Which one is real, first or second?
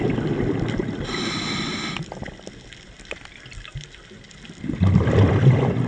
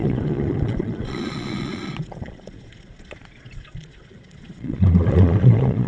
first